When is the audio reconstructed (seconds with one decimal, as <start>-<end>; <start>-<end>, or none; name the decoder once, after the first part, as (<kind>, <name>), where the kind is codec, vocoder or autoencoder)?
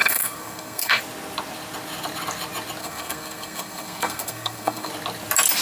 0.0-1.0 (codec, SNAC); 2.8-4.9